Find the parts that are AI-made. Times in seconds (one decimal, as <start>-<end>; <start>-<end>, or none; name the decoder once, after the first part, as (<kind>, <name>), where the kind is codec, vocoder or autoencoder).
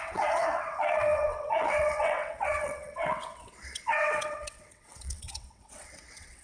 0.0-6.4 (vocoder, WaveNeXt)